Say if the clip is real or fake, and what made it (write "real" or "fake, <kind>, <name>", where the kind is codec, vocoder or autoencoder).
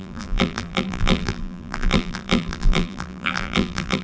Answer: fake, vocoder, BigVGAN v2